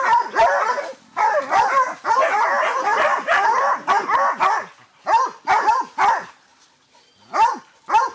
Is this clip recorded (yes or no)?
yes